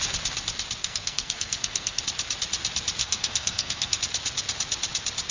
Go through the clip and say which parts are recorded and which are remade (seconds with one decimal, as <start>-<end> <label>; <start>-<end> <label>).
0.0-0.8 recorded; 0.8-2.0 remade; 2.0-3.0 recorded; 3.0-4.0 remade; 4.0-5.3 recorded